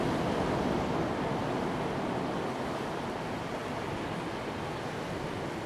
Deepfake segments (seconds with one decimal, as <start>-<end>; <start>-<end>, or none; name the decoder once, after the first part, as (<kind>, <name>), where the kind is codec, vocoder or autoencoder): none